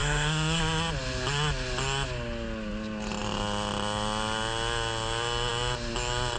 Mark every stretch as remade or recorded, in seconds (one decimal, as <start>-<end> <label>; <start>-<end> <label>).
0.0-0.6 remade; 0.6-6.4 recorded